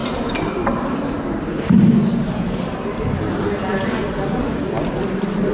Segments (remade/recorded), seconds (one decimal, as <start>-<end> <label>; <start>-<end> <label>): 0.0-3.3 remade; 3.3-5.5 recorded